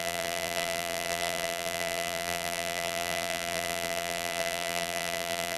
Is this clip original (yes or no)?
no